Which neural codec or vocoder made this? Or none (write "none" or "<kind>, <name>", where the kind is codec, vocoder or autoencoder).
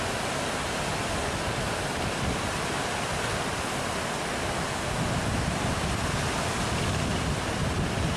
none